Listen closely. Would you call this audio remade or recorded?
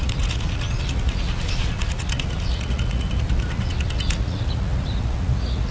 remade